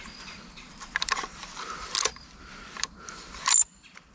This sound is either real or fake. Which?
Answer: fake